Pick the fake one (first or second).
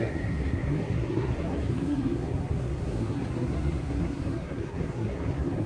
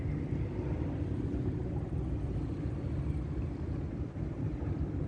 first